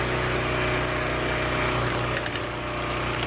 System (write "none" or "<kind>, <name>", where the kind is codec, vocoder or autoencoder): none